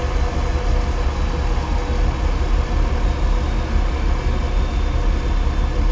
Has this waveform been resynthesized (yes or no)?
no